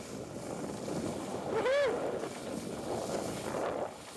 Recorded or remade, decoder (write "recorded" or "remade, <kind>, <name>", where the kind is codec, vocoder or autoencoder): recorded